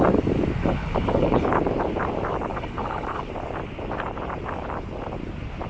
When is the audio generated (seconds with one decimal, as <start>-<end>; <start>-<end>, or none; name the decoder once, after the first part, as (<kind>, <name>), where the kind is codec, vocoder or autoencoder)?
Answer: 0.6-1.5 (codec, HILCodec); 2.5-3.3